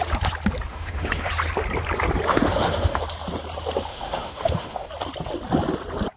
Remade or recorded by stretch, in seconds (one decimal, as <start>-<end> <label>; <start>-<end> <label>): 0.0-0.7 recorded; 0.7-1.3 remade; 1.3-2.3 recorded; 2.3-3.0 remade; 3.0-3.9 recorded; 3.9-4.9 remade; 4.9-6.2 recorded